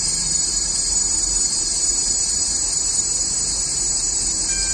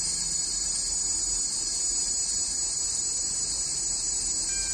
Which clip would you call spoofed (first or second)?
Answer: first